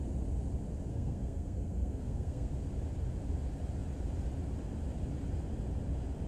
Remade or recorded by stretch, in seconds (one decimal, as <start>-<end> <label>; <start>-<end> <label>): 0.0-0.9 recorded; 0.9-2.5 remade; 2.5-6.3 recorded